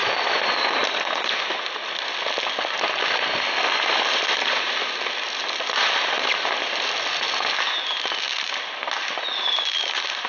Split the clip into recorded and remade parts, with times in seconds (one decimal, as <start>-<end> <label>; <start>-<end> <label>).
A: 0.0-10.3 recorded